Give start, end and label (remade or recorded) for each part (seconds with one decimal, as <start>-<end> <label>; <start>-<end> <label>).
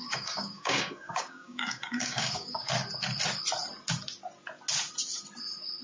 0.0-2.7 remade; 2.7-5.8 recorded